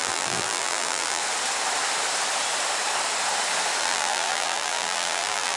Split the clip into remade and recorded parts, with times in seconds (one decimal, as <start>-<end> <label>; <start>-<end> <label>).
0.0-1.2 remade; 1.2-3.8 recorded; 3.8-5.6 remade